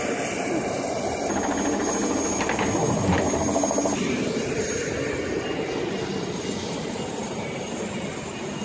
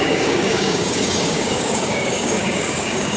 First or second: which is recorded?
first